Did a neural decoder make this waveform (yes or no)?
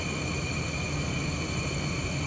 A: no